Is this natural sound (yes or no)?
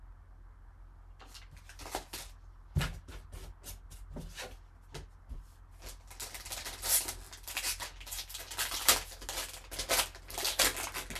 yes